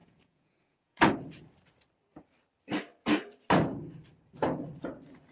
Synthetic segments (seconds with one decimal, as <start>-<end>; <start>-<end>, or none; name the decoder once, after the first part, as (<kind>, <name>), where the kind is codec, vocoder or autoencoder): 0.0-1.1 (vocoder, Vocos)